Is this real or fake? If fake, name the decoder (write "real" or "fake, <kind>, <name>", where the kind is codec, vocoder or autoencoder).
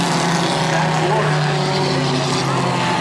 real